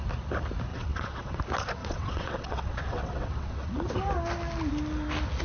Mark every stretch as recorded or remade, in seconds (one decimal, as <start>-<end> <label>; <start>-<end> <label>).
0.0-0.7 recorded; 0.7-1.4 remade; 1.4-1.8 recorded; 1.8-3.7 remade; 3.7-5.4 recorded